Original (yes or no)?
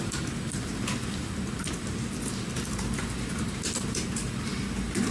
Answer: yes